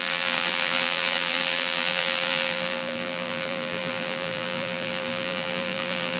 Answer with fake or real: fake